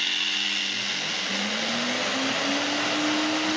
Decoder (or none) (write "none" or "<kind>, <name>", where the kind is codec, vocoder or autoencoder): none